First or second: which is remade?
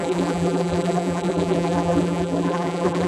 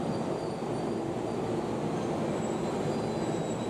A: first